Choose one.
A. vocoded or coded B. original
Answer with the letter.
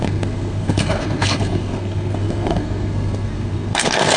A